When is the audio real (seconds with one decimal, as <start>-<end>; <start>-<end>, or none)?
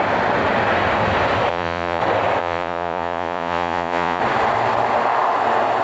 0.0-1.5; 2.0-2.4; 4.2-5.8